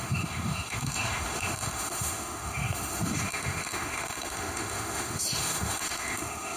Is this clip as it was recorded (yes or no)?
no